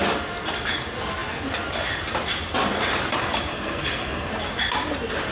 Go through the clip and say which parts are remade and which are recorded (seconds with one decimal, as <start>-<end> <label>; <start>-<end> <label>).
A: 0.0-3.5 recorded; 3.5-4.3 remade; 4.3-5.3 recorded